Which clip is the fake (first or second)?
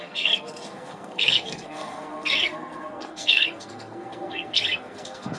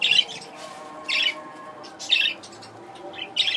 first